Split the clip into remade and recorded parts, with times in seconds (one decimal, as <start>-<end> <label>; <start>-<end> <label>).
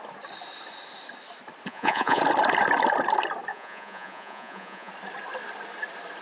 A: 0.0-1.7 recorded; 1.7-2.2 remade; 2.2-3.5 recorded; 3.5-4.9 remade; 4.9-6.2 recorded